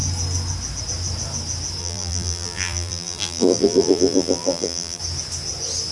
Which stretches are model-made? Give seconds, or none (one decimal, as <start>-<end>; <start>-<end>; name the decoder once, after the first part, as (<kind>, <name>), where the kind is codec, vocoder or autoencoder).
1.8-5.0 (vocoder, BigVGAN v2)